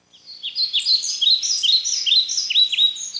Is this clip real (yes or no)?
yes